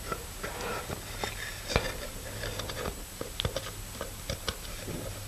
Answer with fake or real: real